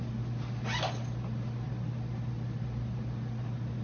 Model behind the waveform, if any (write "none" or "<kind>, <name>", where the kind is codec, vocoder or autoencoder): none